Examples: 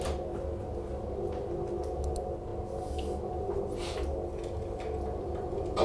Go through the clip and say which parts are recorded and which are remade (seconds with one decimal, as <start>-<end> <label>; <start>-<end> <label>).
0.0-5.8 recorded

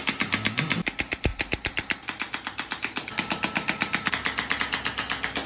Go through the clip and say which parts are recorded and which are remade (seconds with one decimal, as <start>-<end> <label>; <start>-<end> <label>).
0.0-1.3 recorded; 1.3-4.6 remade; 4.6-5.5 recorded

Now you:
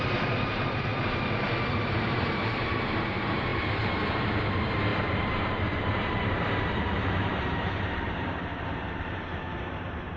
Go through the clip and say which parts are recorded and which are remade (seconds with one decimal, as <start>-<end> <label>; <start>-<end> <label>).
0.0-0.9 remade; 0.9-1.8 recorded; 1.8-10.2 remade

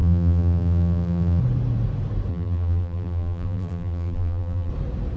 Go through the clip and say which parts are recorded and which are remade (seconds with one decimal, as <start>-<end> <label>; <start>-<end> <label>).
0.0-1.4 remade; 1.4-2.3 recorded; 2.3-4.7 remade; 4.7-5.2 recorded

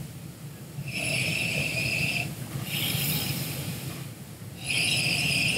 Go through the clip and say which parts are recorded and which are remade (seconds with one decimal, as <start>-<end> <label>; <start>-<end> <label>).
0.0-0.8 recorded; 0.8-4.2 remade; 4.2-5.6 recorded

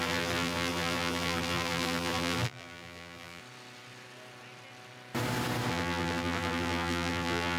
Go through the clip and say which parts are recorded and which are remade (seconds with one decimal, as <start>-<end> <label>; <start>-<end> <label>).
0.0-3.4 remade; 3.4-5.7 recorded; 5.7-7.6 remade